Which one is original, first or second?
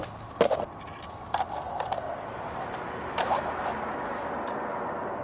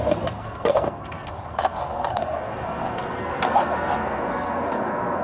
first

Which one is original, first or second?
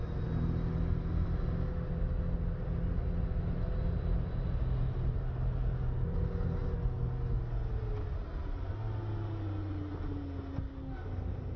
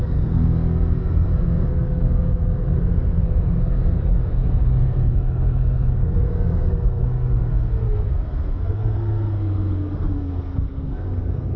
first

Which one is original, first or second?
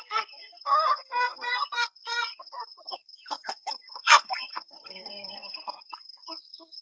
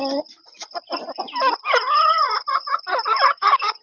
second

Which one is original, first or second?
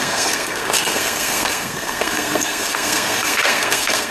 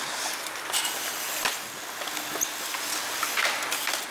second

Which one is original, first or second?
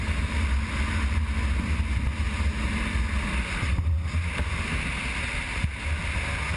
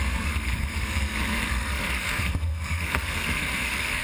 first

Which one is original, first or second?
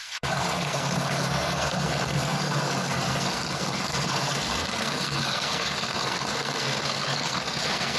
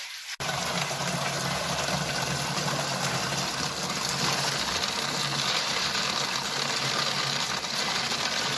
second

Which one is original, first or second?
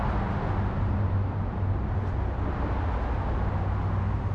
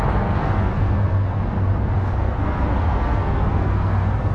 first